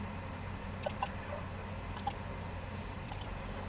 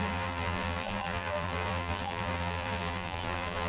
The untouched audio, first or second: first